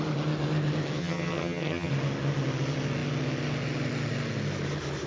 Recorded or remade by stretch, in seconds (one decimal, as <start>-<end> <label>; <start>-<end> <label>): 0.0-1.0 recorded; 1.0-1.9 remade; 1.9-5.1 recorded